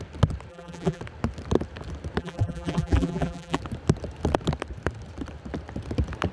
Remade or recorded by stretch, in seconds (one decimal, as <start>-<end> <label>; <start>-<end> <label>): 0.0-0.5 recorded; 0.5-1.0 remade; 1.0-2.2 recorded; 2.2-3.6 remade; 3.6-6.3 recorded